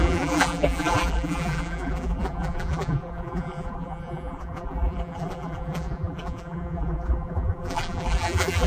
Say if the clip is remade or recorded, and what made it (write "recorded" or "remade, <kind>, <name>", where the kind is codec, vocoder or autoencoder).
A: remade, vocoder, BigVGAN v2